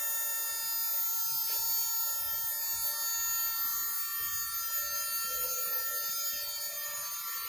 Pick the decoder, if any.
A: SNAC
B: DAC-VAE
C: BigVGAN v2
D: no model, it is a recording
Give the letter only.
D